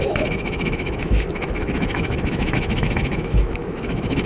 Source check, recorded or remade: remade